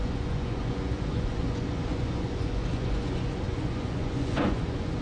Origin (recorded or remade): remade